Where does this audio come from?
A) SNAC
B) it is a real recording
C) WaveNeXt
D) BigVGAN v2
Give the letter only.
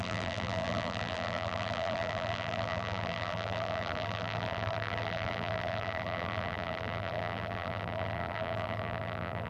D